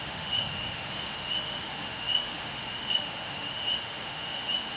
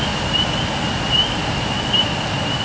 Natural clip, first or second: second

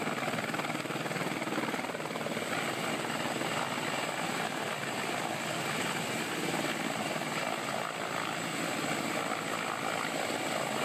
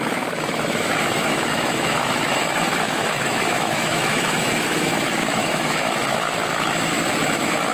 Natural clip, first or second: first